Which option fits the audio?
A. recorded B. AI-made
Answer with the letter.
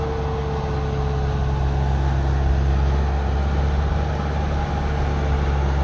A